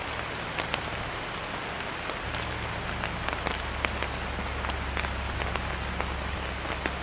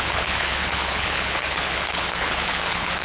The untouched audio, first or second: first